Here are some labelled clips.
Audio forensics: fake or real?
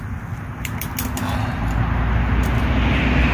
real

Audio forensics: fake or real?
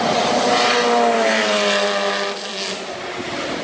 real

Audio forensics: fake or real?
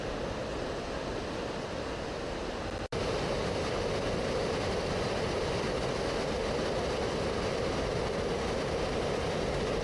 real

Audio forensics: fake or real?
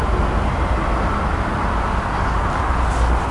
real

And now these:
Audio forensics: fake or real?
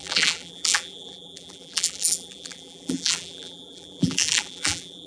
fake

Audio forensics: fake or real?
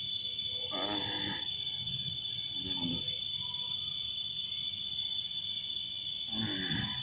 real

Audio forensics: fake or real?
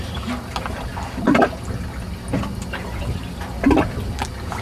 real